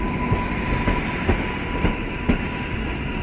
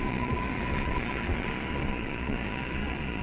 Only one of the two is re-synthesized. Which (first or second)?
second